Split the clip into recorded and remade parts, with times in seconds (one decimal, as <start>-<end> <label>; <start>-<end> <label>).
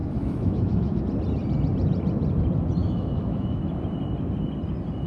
0.0-1.0 remade; 1.0-2.8 recorded; 2.8-3.6 remade; 3.6-5.1 recorded